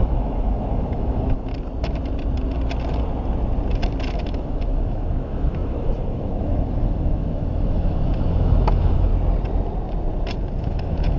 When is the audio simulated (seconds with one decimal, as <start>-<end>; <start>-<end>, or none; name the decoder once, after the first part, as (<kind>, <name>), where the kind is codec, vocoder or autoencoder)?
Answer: 0.0-1.5 (autoencoder, DAC-VAE); 4.2-9.1; 10.6-11.2